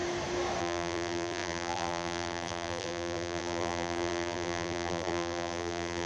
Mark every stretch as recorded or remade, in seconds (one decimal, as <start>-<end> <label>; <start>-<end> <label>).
0.0-0.6 recorded; 0.6-6.1 remade